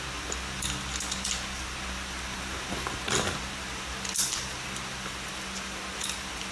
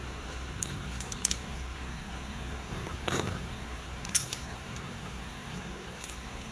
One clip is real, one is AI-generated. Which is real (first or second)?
first